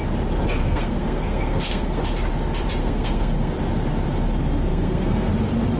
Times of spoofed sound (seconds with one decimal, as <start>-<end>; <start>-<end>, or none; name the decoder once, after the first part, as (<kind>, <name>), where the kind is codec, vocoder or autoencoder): 0.6-2.0 (codec, SNAC); 2.8-3.5; 4.7-5.3

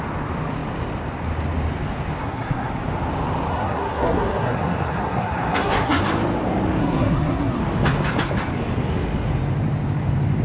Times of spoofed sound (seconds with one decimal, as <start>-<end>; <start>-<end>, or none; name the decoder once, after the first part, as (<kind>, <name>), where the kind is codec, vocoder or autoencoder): 2.2-2.7 (codec, SNAC); 3.5-6.0; 6.8-7.6

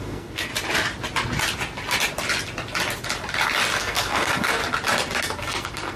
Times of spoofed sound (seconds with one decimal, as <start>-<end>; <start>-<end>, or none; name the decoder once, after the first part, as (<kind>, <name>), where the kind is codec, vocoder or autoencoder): 0.0-0.5 (codec, SNAC); 3.8-4.6; 5.2-6.0

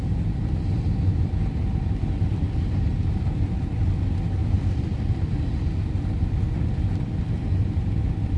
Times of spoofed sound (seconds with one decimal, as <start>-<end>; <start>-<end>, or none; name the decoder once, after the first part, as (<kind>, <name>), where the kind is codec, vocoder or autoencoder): none